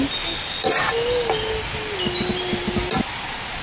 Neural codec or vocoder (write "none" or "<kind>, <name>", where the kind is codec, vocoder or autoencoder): none